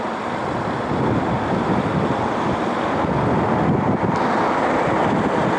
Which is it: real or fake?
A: real